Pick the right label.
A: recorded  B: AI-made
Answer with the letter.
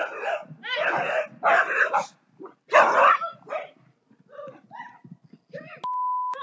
A